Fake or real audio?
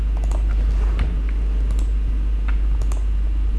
real